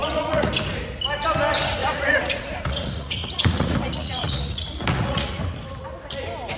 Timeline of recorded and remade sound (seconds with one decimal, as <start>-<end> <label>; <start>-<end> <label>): 0.0-0.5 remade; 0.5-1.8 recorded; 1.8-5.4 remade; 5.4-6.6 recorded